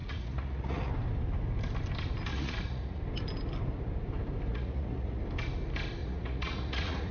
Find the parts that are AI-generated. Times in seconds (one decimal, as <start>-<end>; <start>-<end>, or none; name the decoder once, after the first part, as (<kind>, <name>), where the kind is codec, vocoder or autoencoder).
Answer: 0.0-0.9 (vocoder, Vocos); 2.3-3.0; 4.5-5.2; 6.0-7.1